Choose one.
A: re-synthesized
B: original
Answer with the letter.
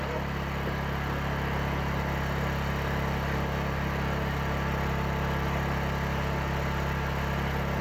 B